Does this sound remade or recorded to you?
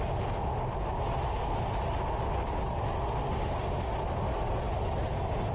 recorded